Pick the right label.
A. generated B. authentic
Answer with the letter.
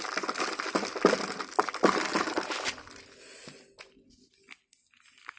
B